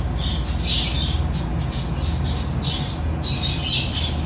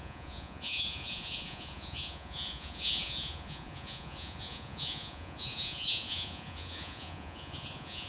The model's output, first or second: second